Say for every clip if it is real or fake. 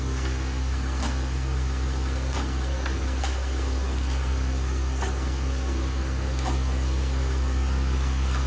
fake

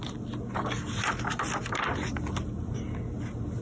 real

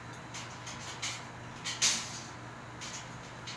real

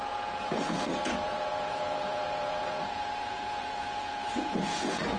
fake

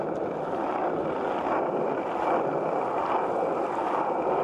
real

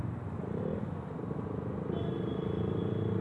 real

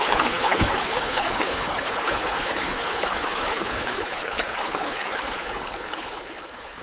fake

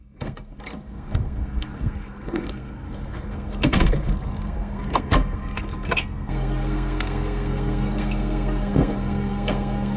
fake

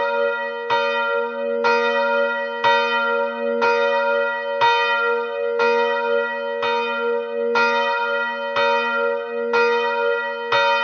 real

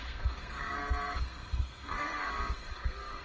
fake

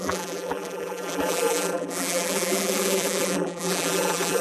fake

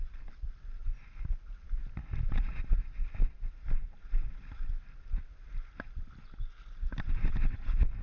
real